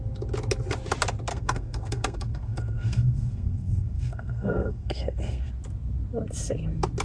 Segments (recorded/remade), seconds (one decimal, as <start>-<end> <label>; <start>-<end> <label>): 0.0-1.3 recorded; 1.3-5.5 remade; 5.5-7.0 recorded

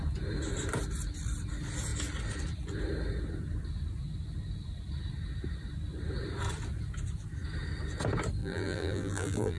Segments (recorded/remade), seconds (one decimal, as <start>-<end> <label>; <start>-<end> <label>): 0.0-8.4 recorded; 8.4-9.6 remade

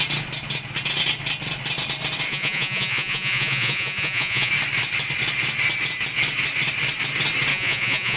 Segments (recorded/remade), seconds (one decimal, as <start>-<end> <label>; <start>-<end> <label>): 0.0-2.3 recorded; 2.3-4.5 remade; 4.5-7.5 recorded; 7.5-8.2 remade

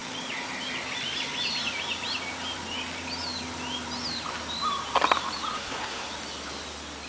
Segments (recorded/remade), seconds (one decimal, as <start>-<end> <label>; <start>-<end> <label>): 0.0-5.5 recorded; 5.5-6.1 remade; 6.1-7.1 recorded